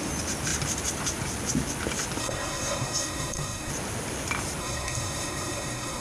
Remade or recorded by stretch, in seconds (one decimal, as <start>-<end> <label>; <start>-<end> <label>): 0.0-2.2 recorded; 2.2-3.7 remade; 3.7-4.6 recorded; 4.6-6.0 remade